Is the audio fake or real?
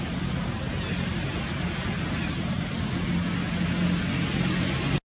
real